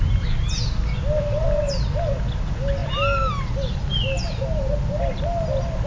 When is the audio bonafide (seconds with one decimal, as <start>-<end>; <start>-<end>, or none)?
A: 0.0-5.9